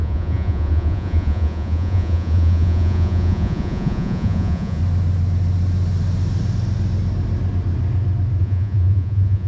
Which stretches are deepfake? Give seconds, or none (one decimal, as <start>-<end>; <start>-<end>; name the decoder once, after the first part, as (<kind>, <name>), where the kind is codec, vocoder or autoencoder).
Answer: 0.0-4.8 (vocoder, Vocos); 8.4-9.5